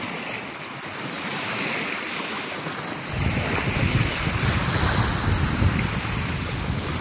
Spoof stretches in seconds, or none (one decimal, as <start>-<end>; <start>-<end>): none